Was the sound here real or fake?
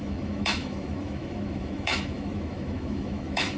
fake